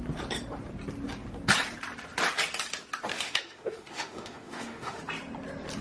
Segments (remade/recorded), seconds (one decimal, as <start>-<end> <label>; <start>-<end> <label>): 0.0-3.1 recorded; 3.1-5.0 remade; 5.0-5.8 recorded